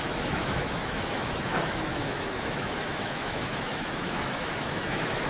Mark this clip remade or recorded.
remade